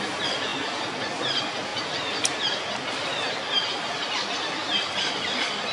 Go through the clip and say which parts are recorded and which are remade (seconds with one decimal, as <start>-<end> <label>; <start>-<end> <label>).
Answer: 0.0-5.7 recorded